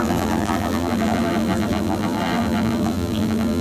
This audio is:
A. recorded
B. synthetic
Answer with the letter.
B